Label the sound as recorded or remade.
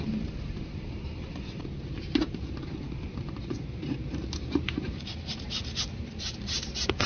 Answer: remade